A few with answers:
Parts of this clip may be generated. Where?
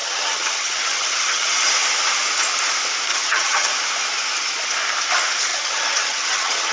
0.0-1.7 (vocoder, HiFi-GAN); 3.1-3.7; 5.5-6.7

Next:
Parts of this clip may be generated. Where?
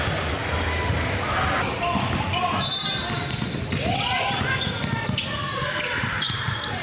6.0-6.8 (vocoder, BigVGAN v2)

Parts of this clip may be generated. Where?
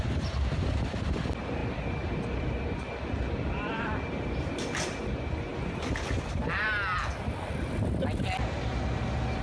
none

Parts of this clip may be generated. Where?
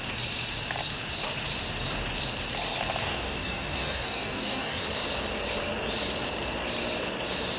3.0-4.8 (codec, DAC)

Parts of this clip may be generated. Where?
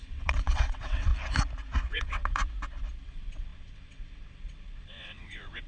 0.0-1.1 (vocoder, WaveNeXt); 1.9-2.4; 3.0-5.7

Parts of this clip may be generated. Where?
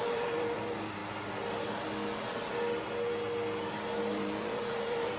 0.0-1.0 (vocoder, BigVGAN v2); 4.1-5.2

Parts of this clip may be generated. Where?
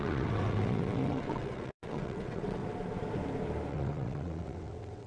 0.0-2.6 (vocoder, WaveNeXt); 3.7-5.1